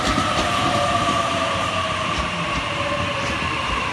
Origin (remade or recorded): remade